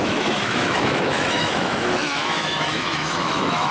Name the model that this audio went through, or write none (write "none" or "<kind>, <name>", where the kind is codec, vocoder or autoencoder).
autoencoder, DAC-VAE